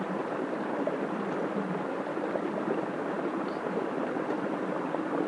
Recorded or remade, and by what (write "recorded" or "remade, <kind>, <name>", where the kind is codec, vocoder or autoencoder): recorded